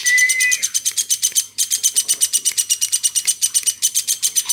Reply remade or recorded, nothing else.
remade